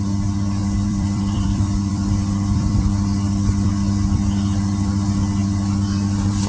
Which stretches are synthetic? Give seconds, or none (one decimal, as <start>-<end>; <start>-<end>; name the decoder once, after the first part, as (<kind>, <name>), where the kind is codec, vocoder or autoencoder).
0.6-3.7 (vocoder, BigVGAN v2); 5.4-6.5